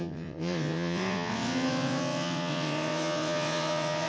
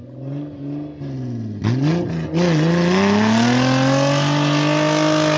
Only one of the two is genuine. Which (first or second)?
second